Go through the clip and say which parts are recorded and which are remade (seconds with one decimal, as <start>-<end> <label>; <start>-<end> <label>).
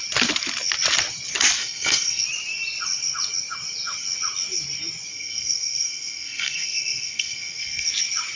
0.0-1.6 recorded; 1.6-2.2 remade; 2.2-5.1 recorded; 5.1-7.9 remade; 7.9-8.3 recorded